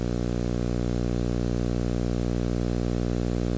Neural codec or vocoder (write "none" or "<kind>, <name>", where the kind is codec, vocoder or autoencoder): none